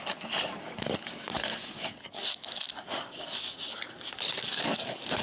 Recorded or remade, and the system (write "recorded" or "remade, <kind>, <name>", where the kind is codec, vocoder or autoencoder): remade, codec, DAC